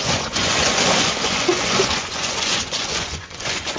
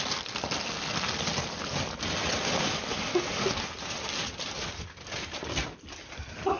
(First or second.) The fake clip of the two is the first